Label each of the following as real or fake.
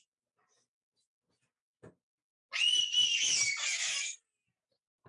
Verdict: real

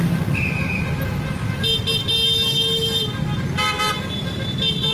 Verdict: real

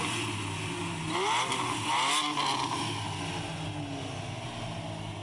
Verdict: real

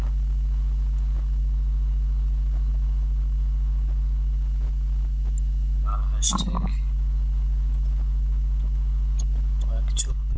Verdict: real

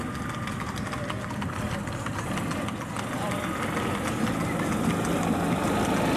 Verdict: real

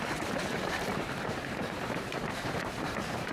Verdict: fake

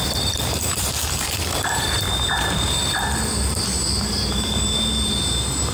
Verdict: fake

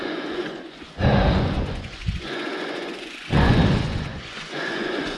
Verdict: fake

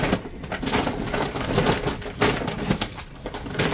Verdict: real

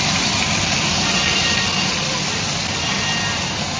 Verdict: real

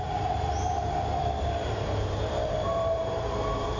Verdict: fake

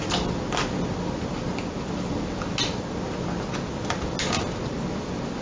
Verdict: real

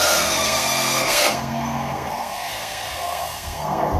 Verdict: fake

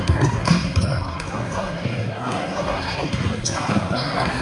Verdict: fake